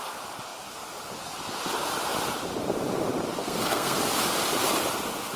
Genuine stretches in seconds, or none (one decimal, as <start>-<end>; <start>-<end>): 0.0-3.4; 4.0-5.4